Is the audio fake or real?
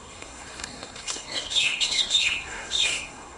fake